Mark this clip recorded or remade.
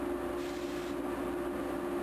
recorded